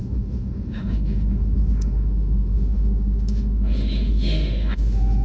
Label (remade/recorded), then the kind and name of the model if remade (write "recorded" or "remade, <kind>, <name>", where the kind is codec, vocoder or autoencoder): remade, autoencoder, DAC-VAE